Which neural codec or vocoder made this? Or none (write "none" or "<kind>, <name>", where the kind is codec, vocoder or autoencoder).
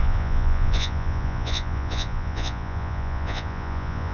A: vocoder, Vocos